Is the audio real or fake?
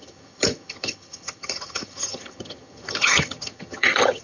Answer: fake